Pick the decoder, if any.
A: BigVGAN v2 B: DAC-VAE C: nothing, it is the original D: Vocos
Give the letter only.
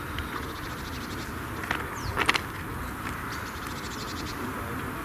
C